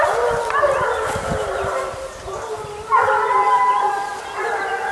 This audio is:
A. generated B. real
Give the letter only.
B